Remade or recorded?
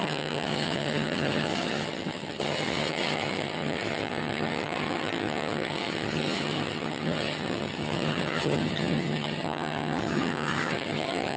remade